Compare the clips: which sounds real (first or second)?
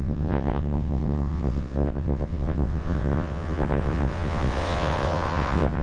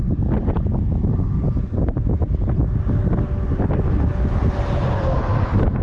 second